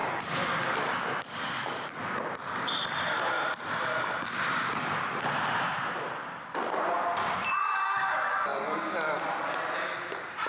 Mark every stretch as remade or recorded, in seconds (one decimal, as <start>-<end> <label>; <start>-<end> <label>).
0.0-2.0 remade; 2.0-7.1 recorded; 7.1-8.0 remade; 8.0-8.5 recorded; 8.5-9.2 remade; 9.2-10.5 recorded